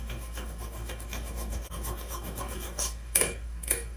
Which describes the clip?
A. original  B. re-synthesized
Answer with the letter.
B